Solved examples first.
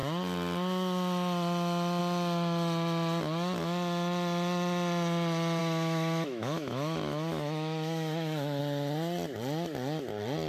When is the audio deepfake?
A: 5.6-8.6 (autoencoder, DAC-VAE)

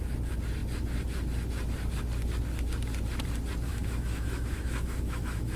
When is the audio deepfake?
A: 3.7-5.6 (autoencoder, DAC-VAE)

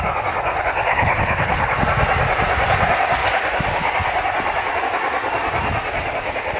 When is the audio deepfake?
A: 0.9-1.8 (codec, HILCodec)